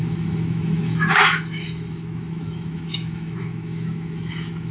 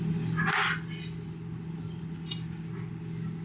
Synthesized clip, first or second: first